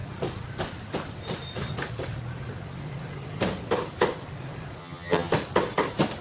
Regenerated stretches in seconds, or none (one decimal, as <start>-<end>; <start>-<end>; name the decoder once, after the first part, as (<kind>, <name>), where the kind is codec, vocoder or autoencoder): 4.8-5.3 (vocoder, HiFi-GAN)